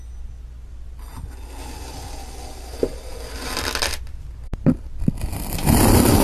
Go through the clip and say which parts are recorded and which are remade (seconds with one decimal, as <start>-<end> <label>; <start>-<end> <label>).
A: 0.0-6.2 recorded